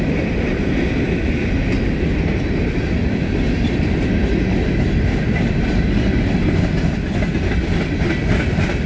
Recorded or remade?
recorded